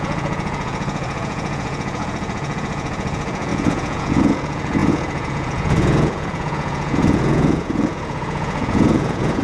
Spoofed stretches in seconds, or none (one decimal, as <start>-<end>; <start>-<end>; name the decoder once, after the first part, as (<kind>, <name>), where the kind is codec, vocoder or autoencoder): 0.0-9.4 (vocoder, Vocos)